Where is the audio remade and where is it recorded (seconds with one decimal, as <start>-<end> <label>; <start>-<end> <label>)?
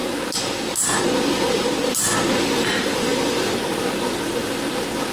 0.0-5.1 recorded